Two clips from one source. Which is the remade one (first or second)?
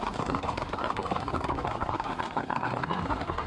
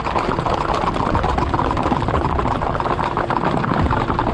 first